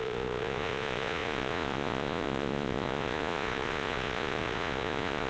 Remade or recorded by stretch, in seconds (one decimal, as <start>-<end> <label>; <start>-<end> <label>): 0.0-5.3 remade